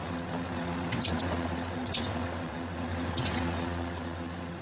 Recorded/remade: remade